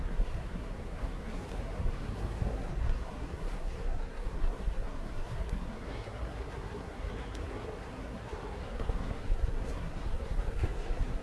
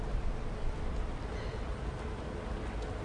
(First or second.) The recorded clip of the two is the second